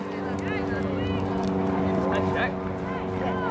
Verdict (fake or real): real